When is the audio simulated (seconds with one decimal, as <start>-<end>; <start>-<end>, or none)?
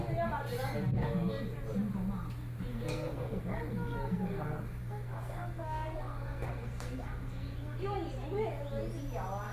2.7-7.9